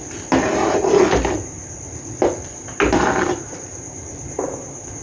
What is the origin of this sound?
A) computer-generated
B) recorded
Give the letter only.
B